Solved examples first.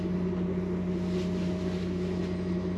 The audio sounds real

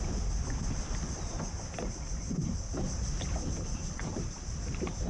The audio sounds real